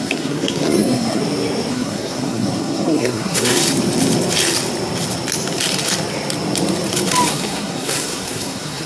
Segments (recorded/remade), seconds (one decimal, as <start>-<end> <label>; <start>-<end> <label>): 0.0-1.2 remade; 1.2-1.7 recorded; 1.7-3.6 remade; 3.6-7.3 recorded; 7.3-8.9 remade